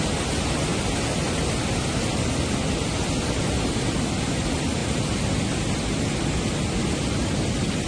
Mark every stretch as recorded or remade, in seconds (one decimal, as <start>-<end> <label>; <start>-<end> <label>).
0.0-7.9 recorded